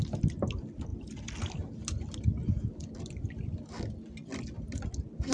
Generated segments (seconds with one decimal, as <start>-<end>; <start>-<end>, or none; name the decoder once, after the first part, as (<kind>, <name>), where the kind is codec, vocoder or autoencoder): none